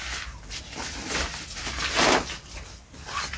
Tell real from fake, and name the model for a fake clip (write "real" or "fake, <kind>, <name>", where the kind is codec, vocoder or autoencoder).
real